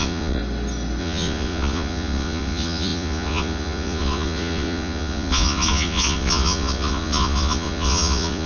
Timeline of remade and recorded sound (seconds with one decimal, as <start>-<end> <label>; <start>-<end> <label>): 0.0-0.4 remade; 0.4-1.0 recorded; 1.0-8.5 remade